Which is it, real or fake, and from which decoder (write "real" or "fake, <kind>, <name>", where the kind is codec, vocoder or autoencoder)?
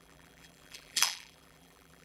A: fake, vocoder, BigVGAN v2